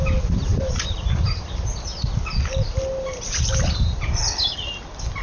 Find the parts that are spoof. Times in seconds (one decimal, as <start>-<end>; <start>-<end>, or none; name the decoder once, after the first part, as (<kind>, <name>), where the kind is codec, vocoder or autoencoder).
none